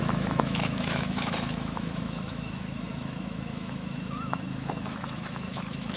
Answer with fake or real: fake